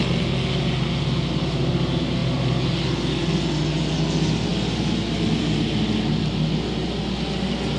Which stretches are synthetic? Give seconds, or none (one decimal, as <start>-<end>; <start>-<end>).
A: none